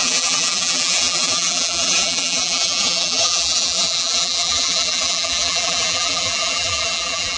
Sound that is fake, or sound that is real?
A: fake